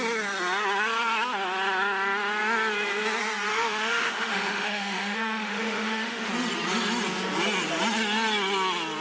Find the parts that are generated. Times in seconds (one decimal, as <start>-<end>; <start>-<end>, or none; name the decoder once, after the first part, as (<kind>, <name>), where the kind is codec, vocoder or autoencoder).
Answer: 3.5-6.3 (autoencoder, DAC-VAE)